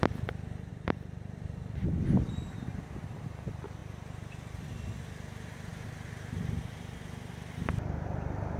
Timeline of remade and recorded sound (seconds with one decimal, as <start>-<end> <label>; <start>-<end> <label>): 0.0-0.7 recorded; 0.7-1.9 remade; 1.9-5.7 recorded; 5.7-6.7 remade; 6.7-8.6 recorded